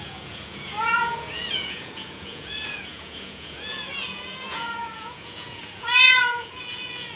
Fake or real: fake